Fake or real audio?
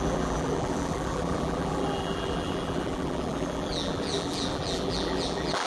fake